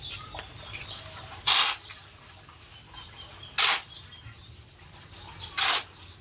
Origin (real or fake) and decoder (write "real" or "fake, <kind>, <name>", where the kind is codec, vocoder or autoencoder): real